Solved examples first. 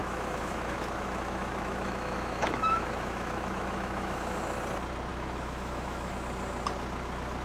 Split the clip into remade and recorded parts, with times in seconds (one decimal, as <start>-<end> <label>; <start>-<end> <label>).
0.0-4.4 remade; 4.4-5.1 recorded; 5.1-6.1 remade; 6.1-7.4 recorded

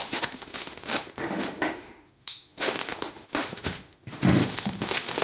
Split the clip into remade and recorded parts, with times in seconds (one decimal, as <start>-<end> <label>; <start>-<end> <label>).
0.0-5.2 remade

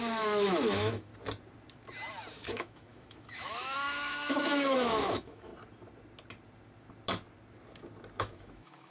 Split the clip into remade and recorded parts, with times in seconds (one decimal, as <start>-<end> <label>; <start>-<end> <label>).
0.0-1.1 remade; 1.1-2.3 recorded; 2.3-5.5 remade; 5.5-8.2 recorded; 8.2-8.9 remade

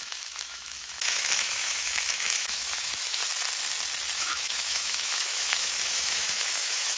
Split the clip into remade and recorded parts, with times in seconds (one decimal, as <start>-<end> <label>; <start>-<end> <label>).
0.0-3.2 remade; 3.2-4.1 recorded; 4.1-7.0 remade